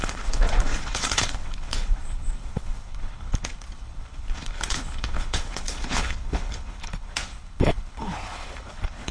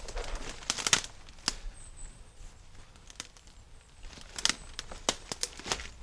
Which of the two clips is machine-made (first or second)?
first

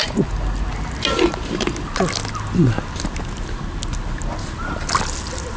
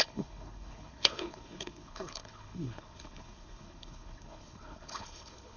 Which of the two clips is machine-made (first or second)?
second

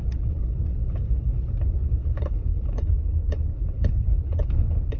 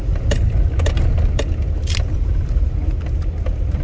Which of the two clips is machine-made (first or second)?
first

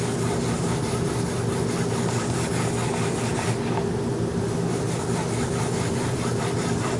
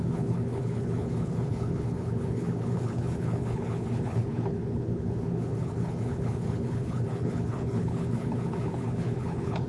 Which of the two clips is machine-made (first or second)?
second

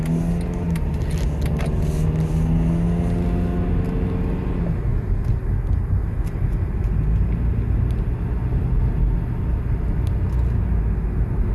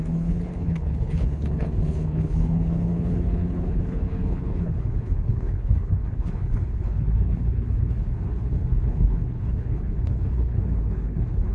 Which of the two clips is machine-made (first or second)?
second